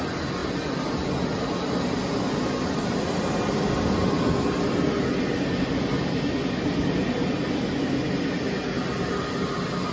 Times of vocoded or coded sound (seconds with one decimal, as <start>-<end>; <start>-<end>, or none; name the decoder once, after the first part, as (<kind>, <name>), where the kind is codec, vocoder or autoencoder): none